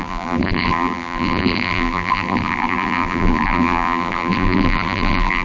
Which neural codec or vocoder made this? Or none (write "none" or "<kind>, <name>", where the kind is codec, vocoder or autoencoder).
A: vocoder, BigVGAN v2